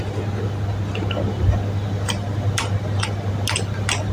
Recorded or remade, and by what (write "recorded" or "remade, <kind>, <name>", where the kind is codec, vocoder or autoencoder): recorded